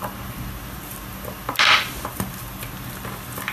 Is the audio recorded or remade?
recorded